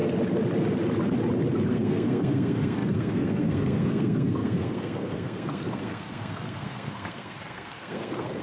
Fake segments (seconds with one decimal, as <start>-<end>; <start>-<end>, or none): 1.7-8.4